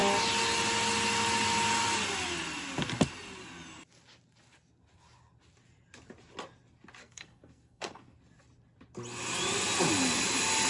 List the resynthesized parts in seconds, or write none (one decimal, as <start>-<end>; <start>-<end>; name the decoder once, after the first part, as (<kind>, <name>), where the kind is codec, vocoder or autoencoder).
7.0-8.2 (codec, SNAC)